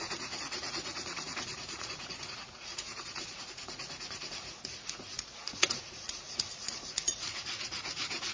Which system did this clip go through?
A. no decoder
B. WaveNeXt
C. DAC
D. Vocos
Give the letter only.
D